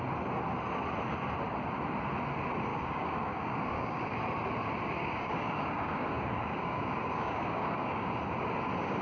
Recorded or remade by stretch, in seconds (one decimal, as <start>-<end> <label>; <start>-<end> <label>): 0.0-2.7 recorded; 2.7-4.2 remade; 4.2-5.0 recorded; 5.0-8.2 remade; 8.2-9.0 recorded